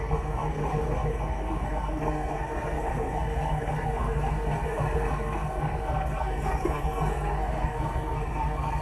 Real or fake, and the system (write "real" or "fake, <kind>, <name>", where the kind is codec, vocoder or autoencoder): fake, codec, SNAC